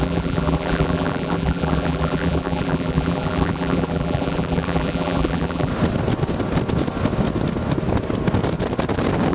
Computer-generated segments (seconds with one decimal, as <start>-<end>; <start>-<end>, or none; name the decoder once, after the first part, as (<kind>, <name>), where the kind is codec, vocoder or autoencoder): 0.0-5.7 (vocoder, BigVGAN v2)